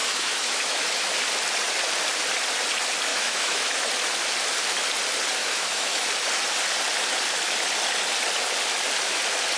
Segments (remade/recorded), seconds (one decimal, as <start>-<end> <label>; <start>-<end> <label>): 0.0-1.1 remade; 1.1-3.1 recorded; 3.1-3.9 remade; 3.9-5.4 recorded; 5.4-6.0 remade; 6.0-9.6 recorded